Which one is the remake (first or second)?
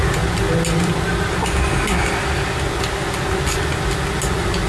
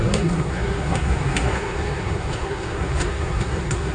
second